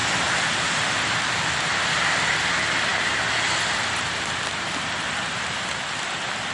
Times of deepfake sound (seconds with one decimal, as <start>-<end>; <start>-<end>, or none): none